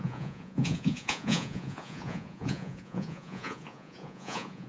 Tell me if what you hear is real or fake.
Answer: fake